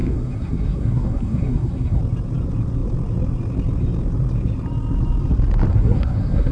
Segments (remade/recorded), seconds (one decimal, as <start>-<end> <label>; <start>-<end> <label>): 0.0-2.0 remade; 2.0-5.7 recorded; 5.7-6.5 remade